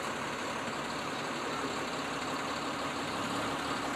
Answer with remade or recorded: recorded